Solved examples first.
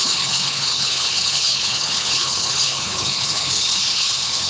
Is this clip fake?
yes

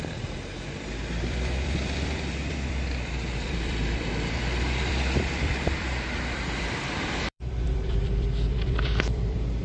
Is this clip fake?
yes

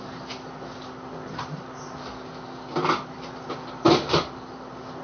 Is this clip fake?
no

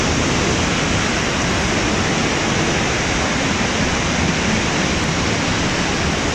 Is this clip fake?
no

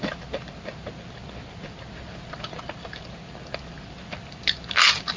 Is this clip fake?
no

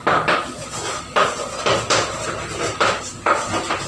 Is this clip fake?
no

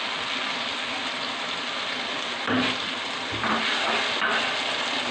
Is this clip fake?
no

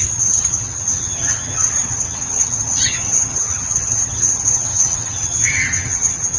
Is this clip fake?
yes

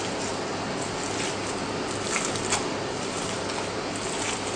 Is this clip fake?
no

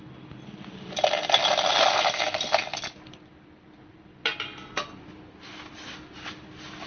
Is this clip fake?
no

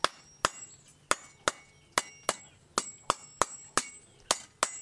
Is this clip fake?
no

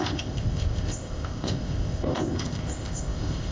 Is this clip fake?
yes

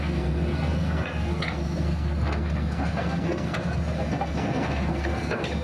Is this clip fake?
yes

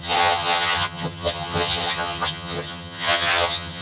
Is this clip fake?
yes